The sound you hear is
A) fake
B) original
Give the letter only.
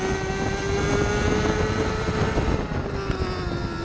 B